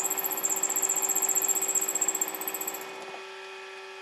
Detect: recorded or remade recorded